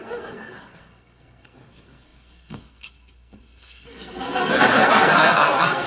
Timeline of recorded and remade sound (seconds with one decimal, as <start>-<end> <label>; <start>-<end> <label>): 0.0-5.9 remade

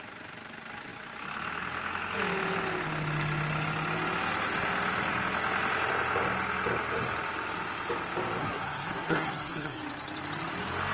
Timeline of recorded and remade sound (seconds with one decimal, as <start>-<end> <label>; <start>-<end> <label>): 0.0-8.4 recorded; 8.4-9.8 remade; 9.8-10.9 recorded